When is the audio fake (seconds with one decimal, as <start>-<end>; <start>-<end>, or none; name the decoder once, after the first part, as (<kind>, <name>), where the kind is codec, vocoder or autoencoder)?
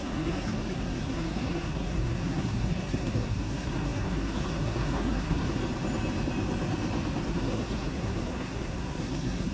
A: 0.0-5.6 (codec, SNAC); 7.3-9.5